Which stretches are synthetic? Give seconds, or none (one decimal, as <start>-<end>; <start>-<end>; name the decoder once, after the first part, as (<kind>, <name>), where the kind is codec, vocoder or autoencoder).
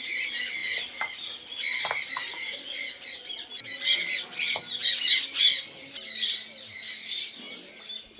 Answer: none